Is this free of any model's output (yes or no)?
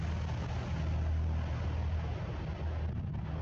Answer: yes